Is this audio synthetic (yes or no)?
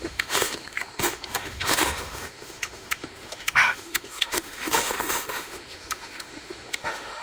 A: yes